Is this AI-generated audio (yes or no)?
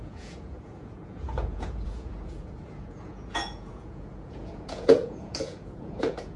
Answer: yes